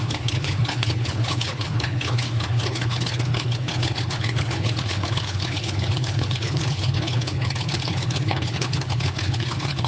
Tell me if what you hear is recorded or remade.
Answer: remade